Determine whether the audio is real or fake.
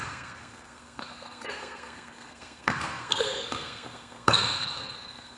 fake